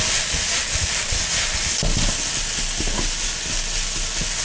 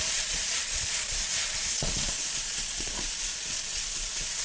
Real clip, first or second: first